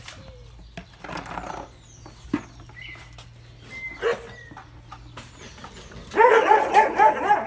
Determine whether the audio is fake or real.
real